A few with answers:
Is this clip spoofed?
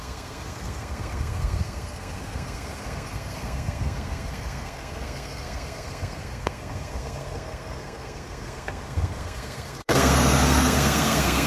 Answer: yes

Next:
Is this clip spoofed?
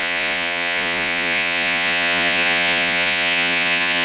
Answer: yes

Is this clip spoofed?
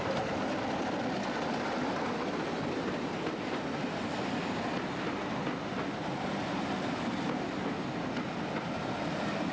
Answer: no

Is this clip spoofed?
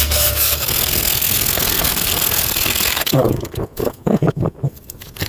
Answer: yes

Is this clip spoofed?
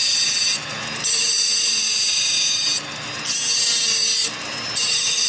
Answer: no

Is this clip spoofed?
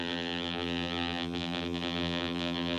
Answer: yes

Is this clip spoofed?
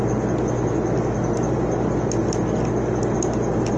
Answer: no